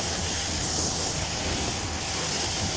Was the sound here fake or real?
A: real